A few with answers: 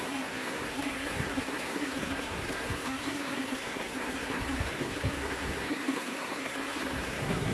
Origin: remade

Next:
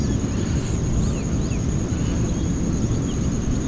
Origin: recorded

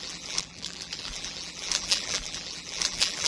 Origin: remade